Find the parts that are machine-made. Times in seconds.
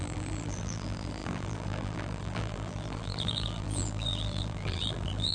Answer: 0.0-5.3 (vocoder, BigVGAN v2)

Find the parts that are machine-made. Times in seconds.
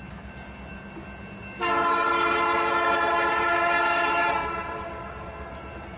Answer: 1.8-4.9 (vocoder, BigVGAN v2)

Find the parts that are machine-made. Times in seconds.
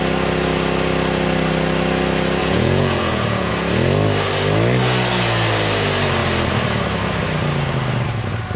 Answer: 2.4-3.5 (vocoder, Vocos)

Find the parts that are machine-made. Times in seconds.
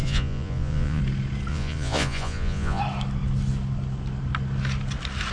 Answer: 0.0-1.0 (vocoder, Vocos); 1.5-2.8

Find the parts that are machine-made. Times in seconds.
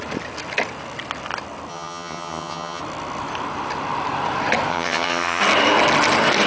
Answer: 1.7-2.8 (vocoder, HiFi-GAN); 4.7-5.4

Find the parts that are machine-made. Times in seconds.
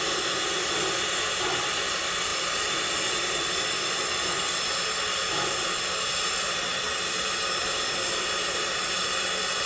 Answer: none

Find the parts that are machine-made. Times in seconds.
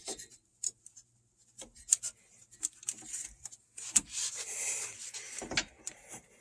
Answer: 0.5-4.3 (vocoder, BigVGAN v2)